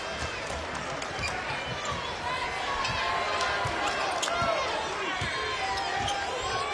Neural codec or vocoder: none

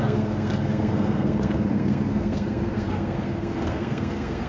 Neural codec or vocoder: codec, SNAC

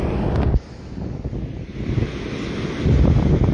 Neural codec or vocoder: none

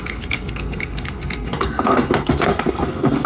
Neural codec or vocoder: codec, SNAC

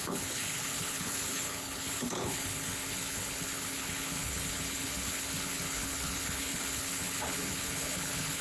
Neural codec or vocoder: codec, HILCodec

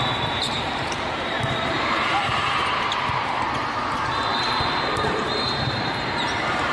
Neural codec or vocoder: vocoder, BigVGAN v2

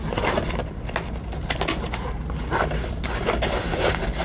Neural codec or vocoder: none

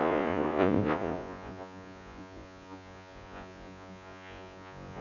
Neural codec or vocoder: vocoder, Vocos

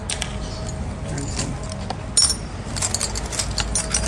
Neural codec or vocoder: none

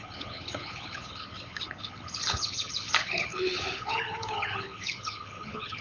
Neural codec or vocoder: codec, HILCodec